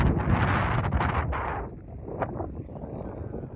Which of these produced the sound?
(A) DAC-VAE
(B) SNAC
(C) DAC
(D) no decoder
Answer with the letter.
D